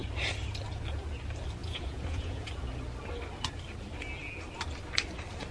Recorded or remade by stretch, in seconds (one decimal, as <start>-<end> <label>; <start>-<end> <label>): 0.0-1.6 recorded; 1.6-2.5 remade; 2.5-5.5 recorded

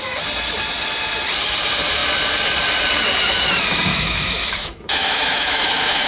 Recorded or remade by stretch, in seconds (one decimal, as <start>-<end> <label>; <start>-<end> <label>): 0.0-3.9 recorded; 3.9-6.1 remade

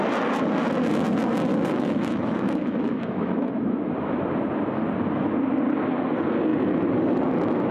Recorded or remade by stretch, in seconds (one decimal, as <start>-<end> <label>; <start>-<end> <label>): 0.0-1.5 recorded; 1.5-3.9 remade; 3.9-7.7 recorded

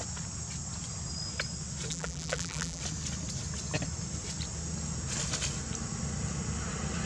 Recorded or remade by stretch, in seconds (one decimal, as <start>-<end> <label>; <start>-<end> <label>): 0.0-1.9 recorded; 1.9-2.8 remade; 2.8-7.1 recorded

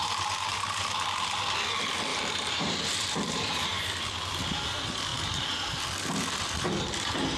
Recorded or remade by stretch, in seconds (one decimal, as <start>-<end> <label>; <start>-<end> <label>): 0.0-2.1 recorded; 2.1-3.8 remade; 3.8-7.4 recorded

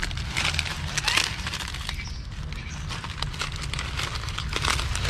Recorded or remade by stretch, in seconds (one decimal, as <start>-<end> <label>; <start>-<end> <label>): 0.0-5.1 recorded

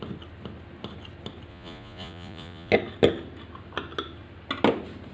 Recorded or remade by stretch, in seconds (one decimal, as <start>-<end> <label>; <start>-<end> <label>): 0.0-1.5 recorded; 1.5-2.7 remade; 2.7-5.1 recorded